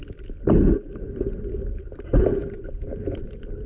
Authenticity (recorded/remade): recorded